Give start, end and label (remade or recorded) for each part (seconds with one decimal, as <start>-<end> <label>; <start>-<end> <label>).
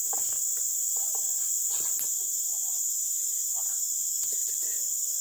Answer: 0.0-0.5 recorded; 0.5-2.5 remade; 2.5-4.4 recorded; 4.4-5.2 remade